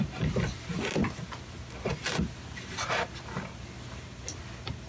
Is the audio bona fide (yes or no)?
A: yes